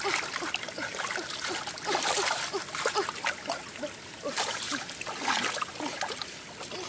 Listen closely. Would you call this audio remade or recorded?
recorded